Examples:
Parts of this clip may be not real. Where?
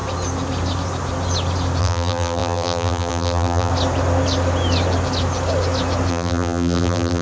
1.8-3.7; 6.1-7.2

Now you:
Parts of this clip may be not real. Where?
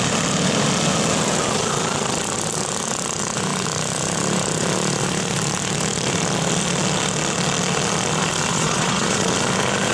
8.5-9.3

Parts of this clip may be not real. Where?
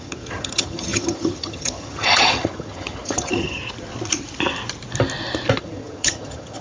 0.0-3.6; 5.6-6.6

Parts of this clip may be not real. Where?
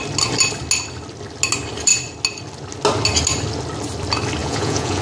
4.4-5.0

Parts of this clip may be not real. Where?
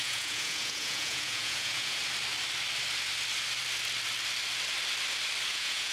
0.0-2.0; 5.5-5.9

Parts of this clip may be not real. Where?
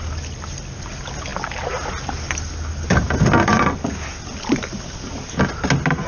none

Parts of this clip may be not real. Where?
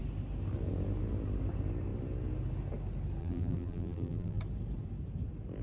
3.2-4.4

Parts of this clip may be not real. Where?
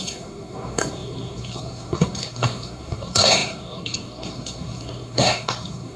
0.0-6.0